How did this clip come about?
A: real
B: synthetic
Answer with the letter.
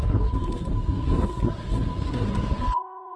B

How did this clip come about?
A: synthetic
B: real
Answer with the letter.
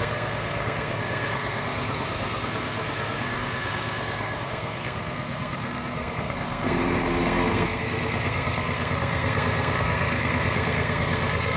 A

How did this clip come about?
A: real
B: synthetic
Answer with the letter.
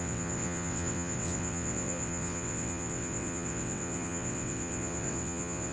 B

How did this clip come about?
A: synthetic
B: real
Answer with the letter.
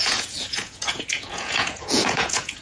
A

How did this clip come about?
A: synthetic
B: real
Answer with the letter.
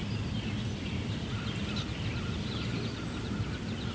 B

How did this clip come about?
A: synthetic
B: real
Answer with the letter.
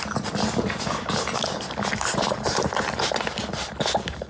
B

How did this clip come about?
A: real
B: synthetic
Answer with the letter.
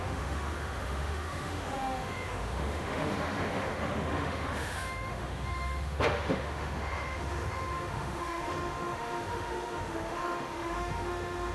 B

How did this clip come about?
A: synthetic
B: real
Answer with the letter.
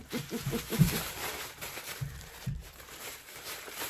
A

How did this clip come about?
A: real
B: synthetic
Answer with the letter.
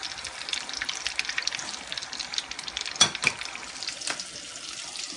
A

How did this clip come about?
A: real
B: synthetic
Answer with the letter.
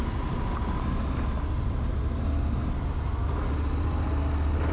A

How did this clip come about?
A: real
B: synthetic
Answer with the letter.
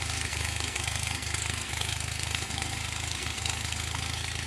B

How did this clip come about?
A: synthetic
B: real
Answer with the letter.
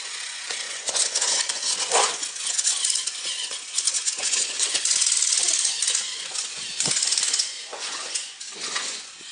A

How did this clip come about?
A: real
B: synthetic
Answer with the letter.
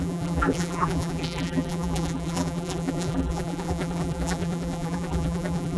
B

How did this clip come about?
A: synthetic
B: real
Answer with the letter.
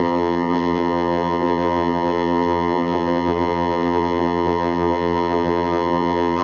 A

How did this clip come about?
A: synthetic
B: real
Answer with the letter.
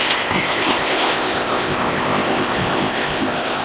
A